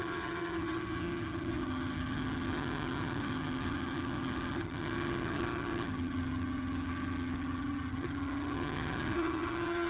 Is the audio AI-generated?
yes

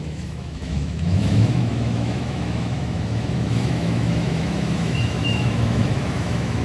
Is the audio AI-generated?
yes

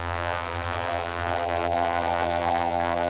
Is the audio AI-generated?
yes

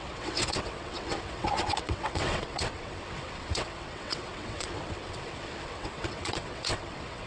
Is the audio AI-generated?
yes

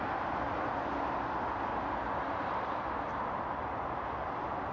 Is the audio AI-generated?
no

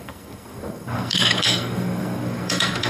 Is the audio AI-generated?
yes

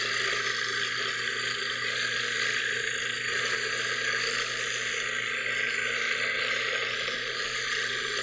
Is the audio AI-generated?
no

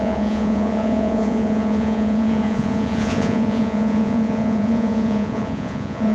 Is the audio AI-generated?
yes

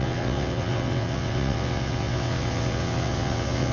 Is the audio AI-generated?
yes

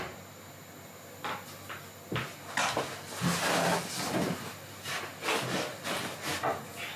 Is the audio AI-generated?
no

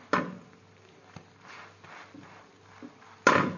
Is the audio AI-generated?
no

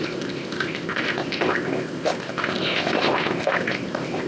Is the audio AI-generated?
yes